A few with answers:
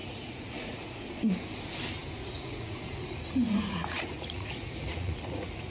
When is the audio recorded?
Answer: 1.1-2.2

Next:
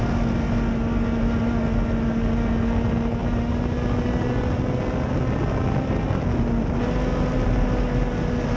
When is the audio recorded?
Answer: 0.0-8.6

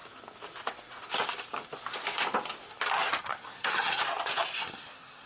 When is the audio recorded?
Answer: 0.0-3.2; 4.0-4.6

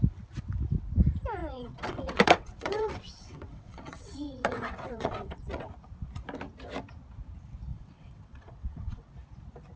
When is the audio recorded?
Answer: 0.0-1.4; 5.7-7.7; 9.1-9.8

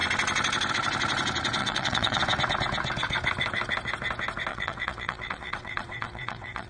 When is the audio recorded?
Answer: 0.0-1.6; 2.2-4.5

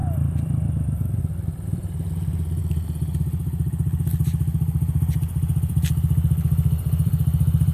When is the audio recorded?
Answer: 0.0-1.2; 2.6-3.2

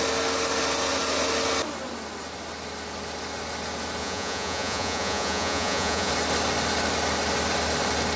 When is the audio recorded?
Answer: 0.0-4.0; 6.1-8.2